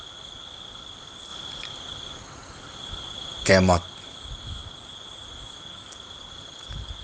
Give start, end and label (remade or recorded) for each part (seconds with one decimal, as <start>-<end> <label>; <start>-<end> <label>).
0.0-1.3 recorded; 1.3-3.5 remade; 3.5-7.0 recorded